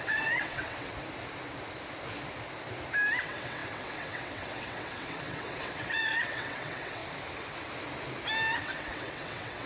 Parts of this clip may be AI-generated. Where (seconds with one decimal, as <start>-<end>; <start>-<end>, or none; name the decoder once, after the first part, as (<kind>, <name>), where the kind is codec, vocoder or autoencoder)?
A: 0.0-0.9 (vocoder, WaveNeXt); 3.2-7.0; 8.6-9.7